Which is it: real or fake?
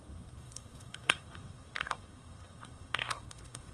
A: fake